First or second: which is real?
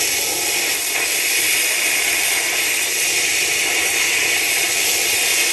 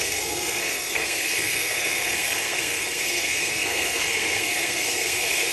first